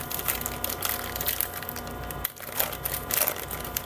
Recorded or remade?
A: recorded